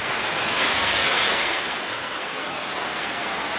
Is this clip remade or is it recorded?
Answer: remade